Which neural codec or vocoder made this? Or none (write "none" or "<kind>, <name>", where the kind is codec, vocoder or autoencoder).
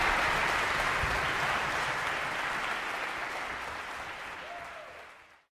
none